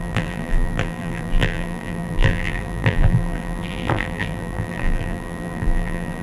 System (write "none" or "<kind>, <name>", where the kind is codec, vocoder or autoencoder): vocoder, BigVGAN v2